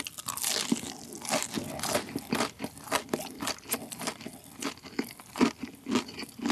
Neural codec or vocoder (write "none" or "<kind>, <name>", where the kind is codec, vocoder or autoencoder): none